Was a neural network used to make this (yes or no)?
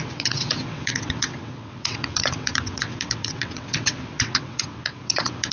yes